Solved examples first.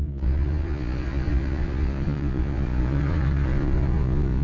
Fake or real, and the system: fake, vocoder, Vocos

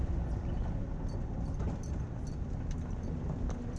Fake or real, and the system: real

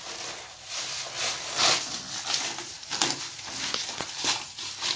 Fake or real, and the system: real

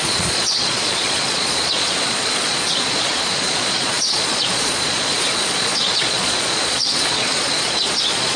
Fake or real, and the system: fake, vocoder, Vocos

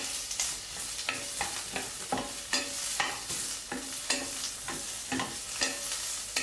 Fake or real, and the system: real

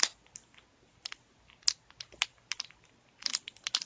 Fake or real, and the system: real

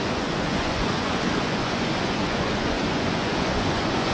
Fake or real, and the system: fake, vocoder, Vocos